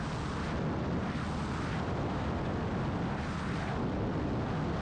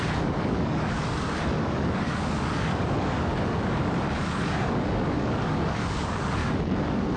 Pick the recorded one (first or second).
first